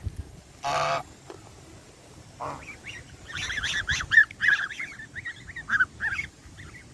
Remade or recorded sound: recorded